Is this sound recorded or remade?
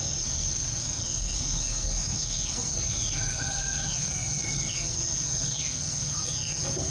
remade